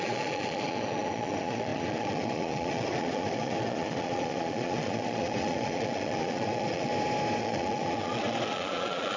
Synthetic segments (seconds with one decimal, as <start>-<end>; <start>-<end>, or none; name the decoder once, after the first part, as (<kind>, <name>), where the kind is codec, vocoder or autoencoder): 0.0-6.9 (vocoder, Vocos); 7.4-9.2